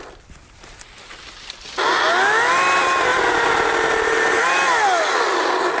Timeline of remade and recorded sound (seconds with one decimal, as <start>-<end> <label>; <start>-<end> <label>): 0.0-5.8 recorded